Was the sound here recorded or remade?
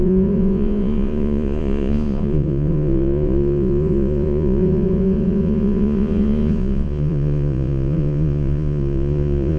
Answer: remade